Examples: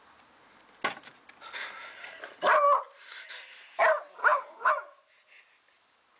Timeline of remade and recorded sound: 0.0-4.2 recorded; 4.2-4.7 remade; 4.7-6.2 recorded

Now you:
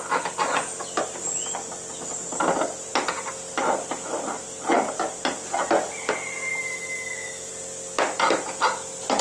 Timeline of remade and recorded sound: 0.0-6.5 recorded; 6.5-7.5 remade; 7.5-9.2 recorded